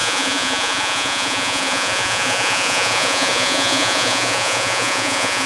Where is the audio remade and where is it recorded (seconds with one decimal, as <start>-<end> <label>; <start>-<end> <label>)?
0.0-5.5 remade